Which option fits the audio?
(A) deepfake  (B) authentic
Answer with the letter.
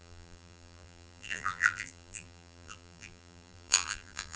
A